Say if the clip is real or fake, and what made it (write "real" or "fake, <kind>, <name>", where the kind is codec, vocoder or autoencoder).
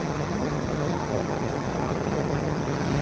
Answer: fake, vocoder, HiFi-GAN